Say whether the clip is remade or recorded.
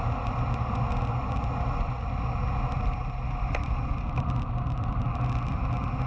recorded